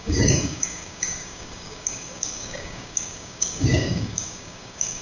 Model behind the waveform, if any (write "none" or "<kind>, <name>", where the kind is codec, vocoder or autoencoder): codec, DAC